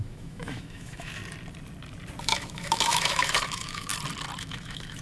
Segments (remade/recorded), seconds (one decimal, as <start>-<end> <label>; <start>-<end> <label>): 0.0-1.2 remade; 1.2-2.2 recorded; 2.2-3.9 remade; 3.9-4.4 recorded; 4.4-5.0 remade